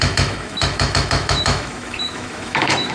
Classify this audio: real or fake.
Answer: fake